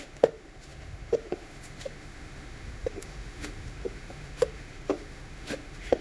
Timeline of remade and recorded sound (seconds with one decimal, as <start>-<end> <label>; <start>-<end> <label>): 0.0-6.0 remade